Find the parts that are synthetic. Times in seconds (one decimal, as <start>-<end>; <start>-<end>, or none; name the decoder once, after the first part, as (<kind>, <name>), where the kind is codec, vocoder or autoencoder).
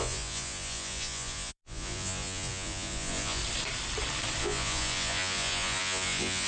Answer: 0.0-3.4 (vocoder, Vocos); 4.4-6.5